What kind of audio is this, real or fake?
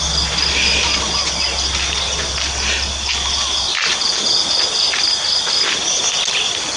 real